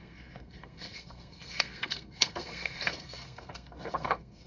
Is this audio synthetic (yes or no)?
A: yes